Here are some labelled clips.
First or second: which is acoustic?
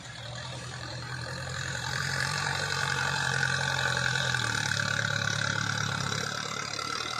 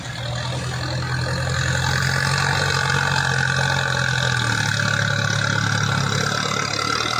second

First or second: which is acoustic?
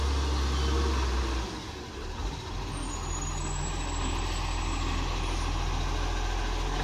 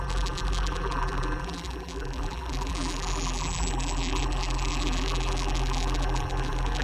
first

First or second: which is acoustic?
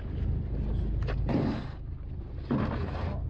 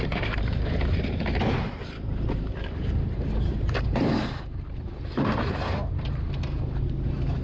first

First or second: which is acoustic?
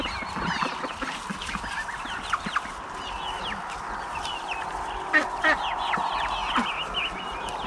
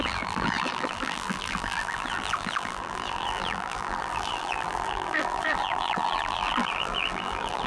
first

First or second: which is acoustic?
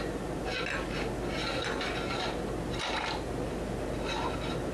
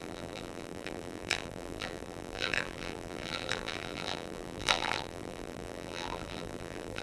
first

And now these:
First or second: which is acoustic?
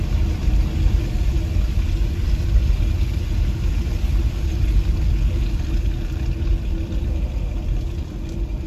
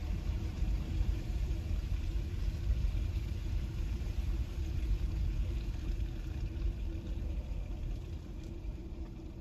first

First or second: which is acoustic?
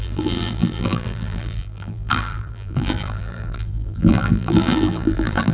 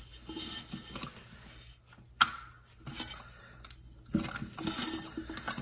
second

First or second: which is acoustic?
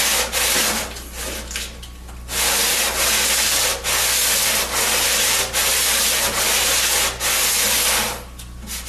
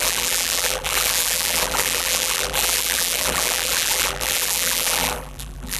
first